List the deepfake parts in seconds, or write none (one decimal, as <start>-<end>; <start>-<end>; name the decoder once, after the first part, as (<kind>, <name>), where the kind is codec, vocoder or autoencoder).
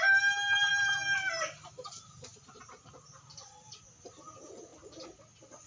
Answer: 0.7-3.0 (vocoder, BigVGAN v2); 4.7-5.2